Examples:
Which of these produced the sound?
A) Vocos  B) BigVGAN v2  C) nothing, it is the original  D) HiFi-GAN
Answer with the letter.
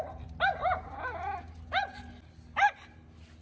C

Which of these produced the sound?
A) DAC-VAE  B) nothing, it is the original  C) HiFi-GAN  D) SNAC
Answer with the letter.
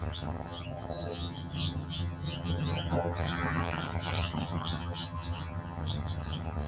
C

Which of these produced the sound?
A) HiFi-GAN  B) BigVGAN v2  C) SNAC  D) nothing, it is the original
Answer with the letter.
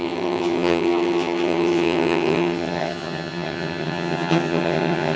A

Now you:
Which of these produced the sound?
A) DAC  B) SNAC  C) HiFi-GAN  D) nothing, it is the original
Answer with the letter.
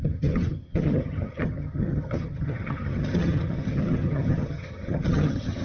C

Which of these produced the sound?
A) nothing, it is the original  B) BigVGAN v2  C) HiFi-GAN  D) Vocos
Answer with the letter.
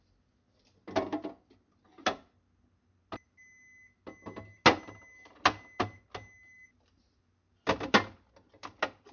A